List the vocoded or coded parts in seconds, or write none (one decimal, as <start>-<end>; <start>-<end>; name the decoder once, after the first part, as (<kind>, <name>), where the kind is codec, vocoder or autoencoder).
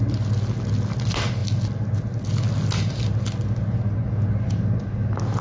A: none